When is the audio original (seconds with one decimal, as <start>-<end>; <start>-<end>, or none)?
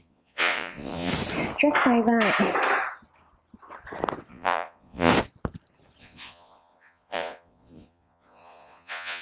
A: 1.1-4.3; 5.1-6.0